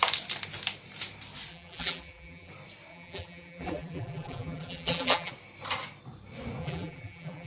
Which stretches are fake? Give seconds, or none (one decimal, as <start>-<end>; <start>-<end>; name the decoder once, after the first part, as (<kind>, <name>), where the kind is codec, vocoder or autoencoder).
1.5-2.5 (vocoder, BigVGAN v2); 2.9-5.3; 6.6-7.5